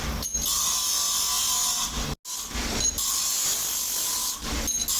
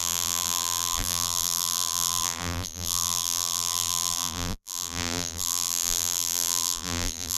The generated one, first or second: second